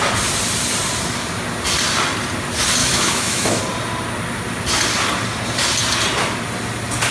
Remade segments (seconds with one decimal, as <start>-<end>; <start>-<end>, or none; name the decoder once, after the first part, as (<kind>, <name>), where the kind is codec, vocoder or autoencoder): 2.8-3.6 (autoencoder, DAC-VAE)